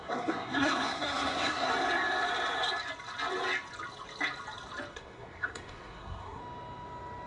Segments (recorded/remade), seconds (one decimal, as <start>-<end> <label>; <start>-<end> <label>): 0.0-1.7 remade; 1.7-4.9 recorded; 4.9-6.4 remade; 6.4-7.3 recorded